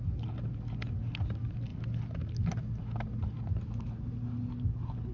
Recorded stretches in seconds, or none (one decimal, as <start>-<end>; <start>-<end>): 0.0-5.1